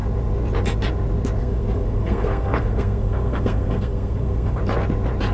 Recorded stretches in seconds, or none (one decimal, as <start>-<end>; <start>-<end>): 0.0-1.4; 4.6-5.3